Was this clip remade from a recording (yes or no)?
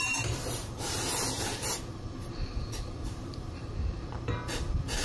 yes